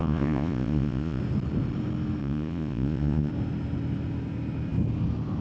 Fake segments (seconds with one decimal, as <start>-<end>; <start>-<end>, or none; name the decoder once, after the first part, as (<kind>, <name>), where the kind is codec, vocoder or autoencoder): 0.0-1.2 (vocoder, Vocos); 2.2-3.3